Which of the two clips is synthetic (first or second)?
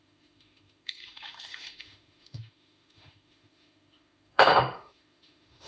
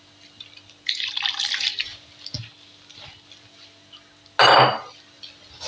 first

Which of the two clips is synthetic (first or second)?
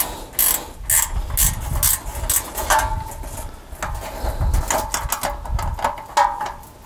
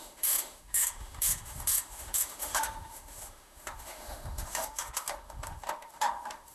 second